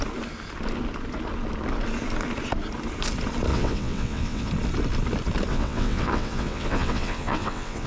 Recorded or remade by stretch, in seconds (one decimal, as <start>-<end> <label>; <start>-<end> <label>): 0.0-3.5 recorded; 3.5-4.5 remade; 4.5-5.5 recorded; 5.5-7.9 remade